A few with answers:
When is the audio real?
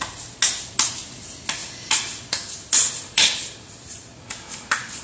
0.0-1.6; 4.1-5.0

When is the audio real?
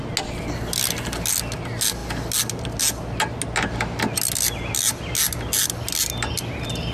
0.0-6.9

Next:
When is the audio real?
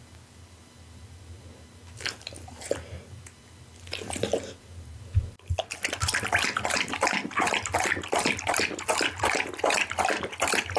0.0-10.8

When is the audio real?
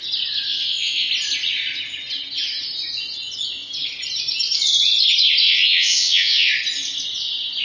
0.0-0.5; 1.1-5.4; 6.5-7.6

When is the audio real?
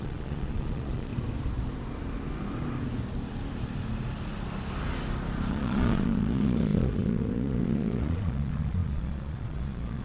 1.1-5.5